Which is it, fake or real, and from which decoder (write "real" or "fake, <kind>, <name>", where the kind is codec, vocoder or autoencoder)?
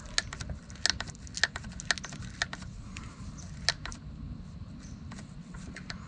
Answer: real